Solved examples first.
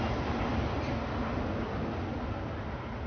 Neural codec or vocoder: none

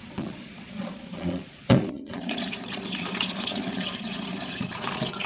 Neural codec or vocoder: vocoder, Vocos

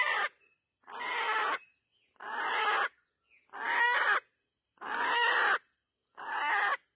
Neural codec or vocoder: none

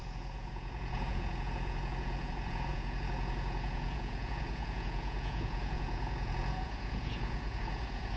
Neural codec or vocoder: vocoder, Vocos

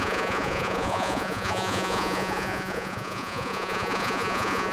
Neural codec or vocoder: vocoder, Vocos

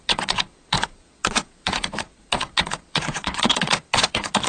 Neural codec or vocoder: vocoder, Vocos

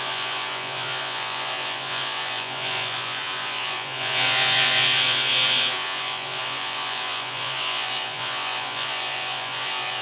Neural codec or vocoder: vocoder, Vocos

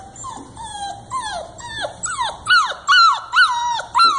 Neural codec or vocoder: none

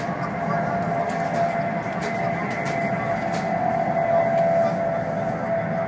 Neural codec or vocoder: none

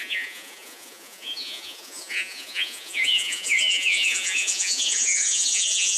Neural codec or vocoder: vocoder, Vocos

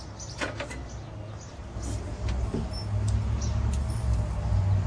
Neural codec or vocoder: none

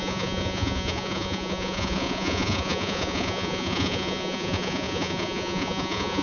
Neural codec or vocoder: vocoder, Vocos